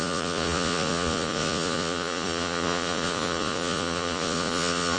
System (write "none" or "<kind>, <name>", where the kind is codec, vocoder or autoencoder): vocoder, Vocos